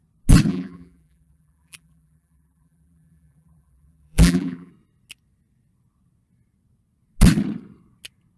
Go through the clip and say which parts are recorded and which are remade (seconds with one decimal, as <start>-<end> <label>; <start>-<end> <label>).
0.0-0.5 recorded; 0.5-4.7 remade; 4.7-8.4 recorded

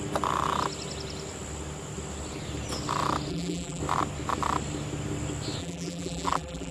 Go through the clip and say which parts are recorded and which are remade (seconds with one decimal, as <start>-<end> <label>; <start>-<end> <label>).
0.0-3.3 recorded; 3.3-3.8 remade; 3.8-5.6 recorded; 5.6-6.7 remade

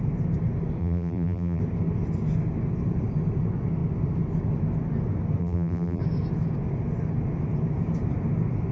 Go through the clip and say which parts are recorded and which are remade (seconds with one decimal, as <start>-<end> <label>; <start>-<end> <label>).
0.0-0.8 recorded; 0.8-1.6 remade; 1.6-5.4 recorded; 5.4-6.0 remade; 6.0-8.7 recorded

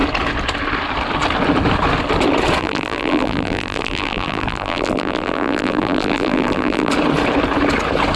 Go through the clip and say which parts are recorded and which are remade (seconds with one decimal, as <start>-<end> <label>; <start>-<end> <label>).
0.0-2.6 recorded; 2.6-6.9 remade; 6.9-8.2 recorded

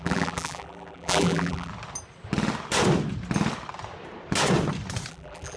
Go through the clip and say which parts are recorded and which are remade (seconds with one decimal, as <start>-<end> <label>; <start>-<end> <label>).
0.0-1.7 remade; 1.7-5.1 recorded; 5.1-5.6 remade

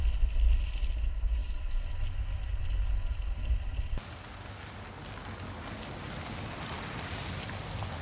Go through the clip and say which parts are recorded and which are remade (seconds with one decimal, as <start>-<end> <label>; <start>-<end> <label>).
0.0-1.4 recorded; 1.4-2.6 remade; 2.6-8.0 recorded

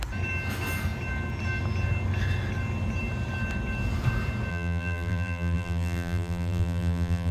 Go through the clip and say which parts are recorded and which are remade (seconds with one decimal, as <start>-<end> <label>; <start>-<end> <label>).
0.0-4.5 recorded; 4.5-7.3 remade